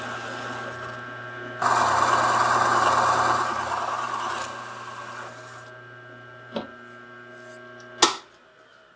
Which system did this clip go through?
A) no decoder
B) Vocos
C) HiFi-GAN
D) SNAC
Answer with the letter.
A